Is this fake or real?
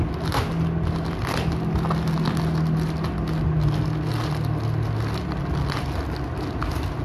real